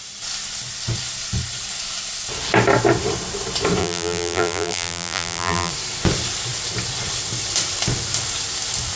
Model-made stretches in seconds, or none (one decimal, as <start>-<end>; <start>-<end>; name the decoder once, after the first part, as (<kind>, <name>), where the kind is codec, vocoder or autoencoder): 3.8-5.7 (vocoder, BigVGAN v2)